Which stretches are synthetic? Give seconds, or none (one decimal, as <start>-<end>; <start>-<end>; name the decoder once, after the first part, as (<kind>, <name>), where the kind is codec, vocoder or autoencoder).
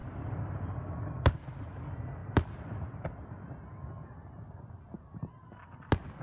0.0-0.9 (vocoder, BigVGAN v2)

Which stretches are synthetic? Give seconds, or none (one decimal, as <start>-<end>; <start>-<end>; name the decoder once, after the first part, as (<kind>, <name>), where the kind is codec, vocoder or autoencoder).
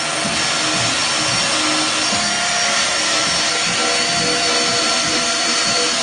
4.5-6.0 (vocoder, BigVGAN v2)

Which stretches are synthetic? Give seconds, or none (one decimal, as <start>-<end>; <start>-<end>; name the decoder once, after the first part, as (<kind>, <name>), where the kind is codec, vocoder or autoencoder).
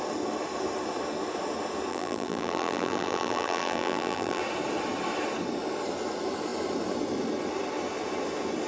1.9-4.4 (vocoder, BigVGAN v2)